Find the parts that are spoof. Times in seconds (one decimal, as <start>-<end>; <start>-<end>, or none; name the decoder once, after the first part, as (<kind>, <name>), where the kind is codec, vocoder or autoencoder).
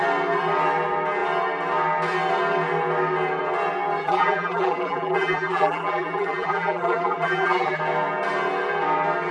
4.0-7.8 (vocoder, BigVGAN v2)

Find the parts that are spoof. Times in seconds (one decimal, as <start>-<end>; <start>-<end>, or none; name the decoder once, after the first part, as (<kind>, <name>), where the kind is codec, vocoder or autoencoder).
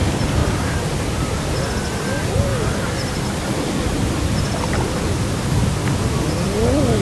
0.4-1.2 (vocoder, BigVGAN v2)